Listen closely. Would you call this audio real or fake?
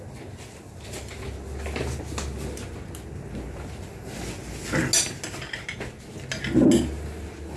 real